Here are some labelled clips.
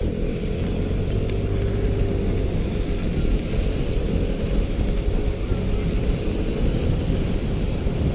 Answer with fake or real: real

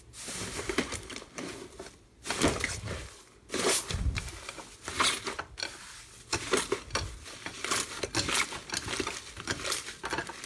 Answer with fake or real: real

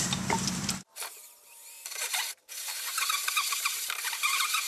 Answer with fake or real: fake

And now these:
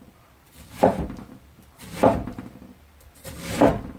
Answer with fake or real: fake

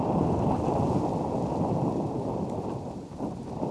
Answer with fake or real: real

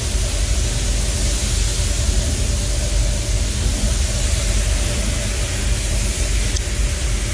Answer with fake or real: real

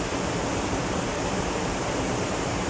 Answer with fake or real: fake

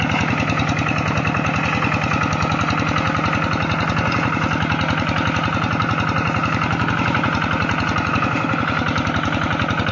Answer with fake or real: real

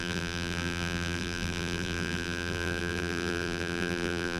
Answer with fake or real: fake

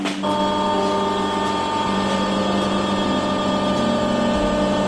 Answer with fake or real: real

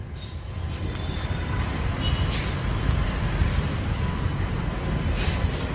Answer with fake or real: fake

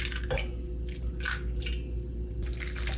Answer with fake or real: real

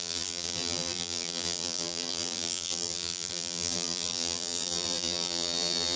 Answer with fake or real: fake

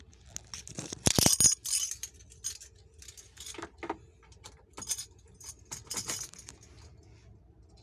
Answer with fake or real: real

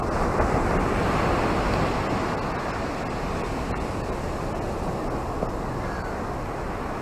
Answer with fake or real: real